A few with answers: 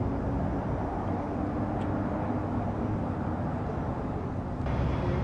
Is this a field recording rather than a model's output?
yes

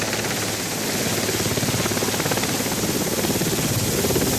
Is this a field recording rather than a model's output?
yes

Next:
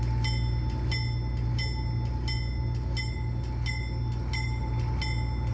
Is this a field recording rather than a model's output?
yes